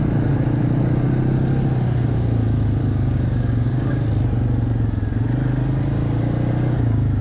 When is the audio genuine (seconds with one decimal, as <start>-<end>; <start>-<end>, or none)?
0.0-2.8; 4.0-7.2